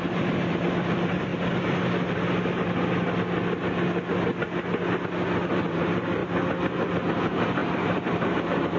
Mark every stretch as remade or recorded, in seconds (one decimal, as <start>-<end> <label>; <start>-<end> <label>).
0.0-1.3 remade; 1.3-5.5 recorded; 5.5-6.2 remade; 6.2-7.1 recorded; 7.1-8.8 remade